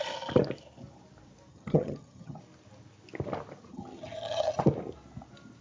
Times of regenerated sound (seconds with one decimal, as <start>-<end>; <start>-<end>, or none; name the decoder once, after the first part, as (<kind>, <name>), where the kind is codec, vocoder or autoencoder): 1.5-2.4 (vocoder, HiFi-GAN); 3.7-4.6